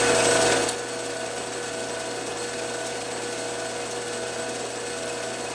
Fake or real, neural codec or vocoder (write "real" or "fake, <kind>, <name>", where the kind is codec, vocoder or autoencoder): real